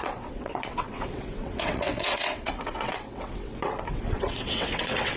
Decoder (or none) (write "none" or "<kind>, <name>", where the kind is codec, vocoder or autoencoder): vocoder, WaveNeXt